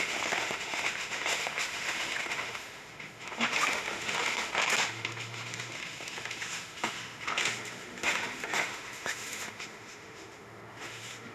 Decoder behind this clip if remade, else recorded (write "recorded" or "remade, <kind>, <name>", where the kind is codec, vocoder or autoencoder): remade, autoencoder, DAC-VAE